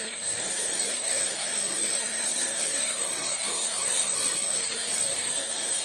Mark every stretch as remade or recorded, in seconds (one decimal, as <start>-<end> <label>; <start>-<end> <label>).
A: 0.0-5.8 remade